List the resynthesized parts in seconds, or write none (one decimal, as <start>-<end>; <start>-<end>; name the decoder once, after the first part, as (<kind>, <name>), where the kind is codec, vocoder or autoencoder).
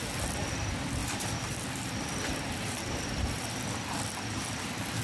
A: 1.0-1.9 (vocoder, BigVGAN v2)